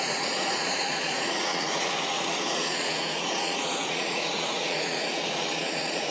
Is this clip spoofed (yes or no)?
yes